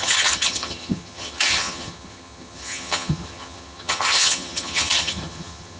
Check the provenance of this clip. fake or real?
fake